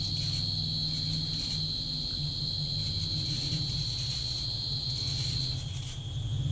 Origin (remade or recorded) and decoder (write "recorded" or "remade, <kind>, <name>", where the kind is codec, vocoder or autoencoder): recorded